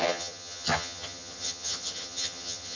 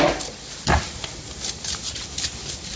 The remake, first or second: first